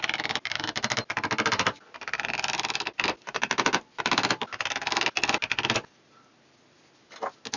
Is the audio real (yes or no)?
yes